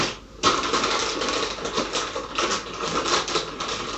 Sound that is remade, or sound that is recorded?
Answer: recorded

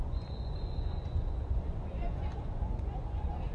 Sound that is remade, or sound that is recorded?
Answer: remade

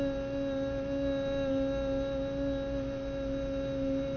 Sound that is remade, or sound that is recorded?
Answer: recorded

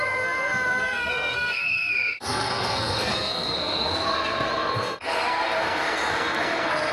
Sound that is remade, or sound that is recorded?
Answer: remade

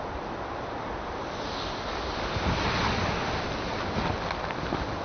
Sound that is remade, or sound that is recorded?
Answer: recorded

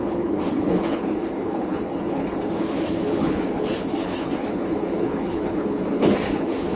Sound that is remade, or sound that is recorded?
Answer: remade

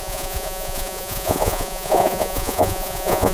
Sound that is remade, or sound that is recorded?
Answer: remade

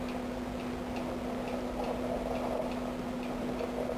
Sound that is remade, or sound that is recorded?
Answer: recorded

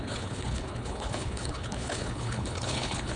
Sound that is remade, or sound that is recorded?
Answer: remade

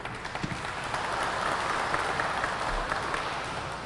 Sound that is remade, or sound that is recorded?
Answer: recorded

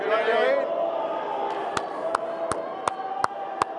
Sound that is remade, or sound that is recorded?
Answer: recorded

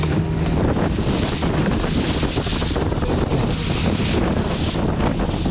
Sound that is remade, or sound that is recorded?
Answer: recorded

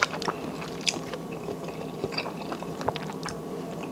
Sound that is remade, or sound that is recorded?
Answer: remade